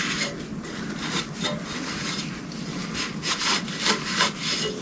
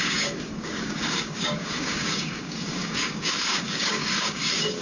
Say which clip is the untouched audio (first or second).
first